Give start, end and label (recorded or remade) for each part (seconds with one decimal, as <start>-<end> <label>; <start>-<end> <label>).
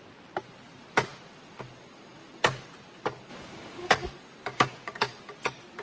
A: 0.0-3.3 recorded; 3.3-3.9 remade; 3.9-4.5 recorded; 4.5-5.1 remade; 5.1-5.8 recorded